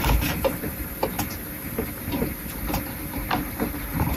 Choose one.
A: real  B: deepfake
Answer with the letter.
B